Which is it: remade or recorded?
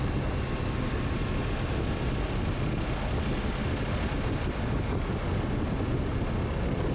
recorded